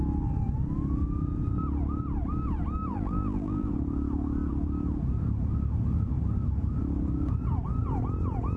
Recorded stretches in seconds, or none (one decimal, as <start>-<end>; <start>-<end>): 0.0-2.9; 3.7-8.6